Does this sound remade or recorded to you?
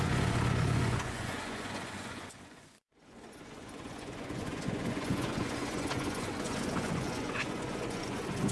remade